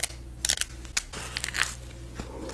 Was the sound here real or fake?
real